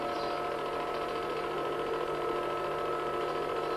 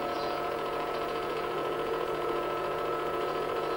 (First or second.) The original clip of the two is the first